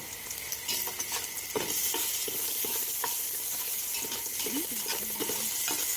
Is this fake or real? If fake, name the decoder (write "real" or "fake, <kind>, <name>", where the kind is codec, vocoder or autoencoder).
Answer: real